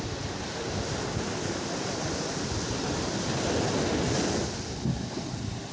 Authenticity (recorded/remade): recorded